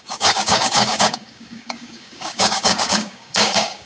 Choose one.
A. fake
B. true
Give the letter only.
A